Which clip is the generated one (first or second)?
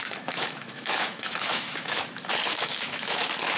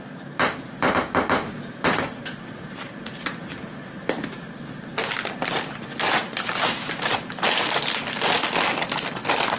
first